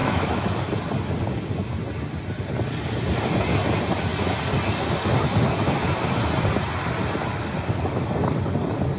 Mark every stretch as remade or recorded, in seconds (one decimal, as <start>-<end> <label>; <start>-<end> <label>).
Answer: 0.0-0.6 remade; 0.6-9.0 recorded